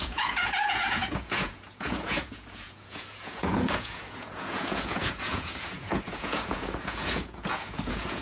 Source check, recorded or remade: remade